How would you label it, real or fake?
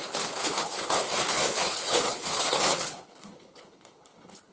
fake